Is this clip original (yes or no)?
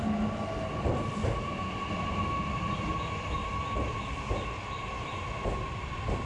yes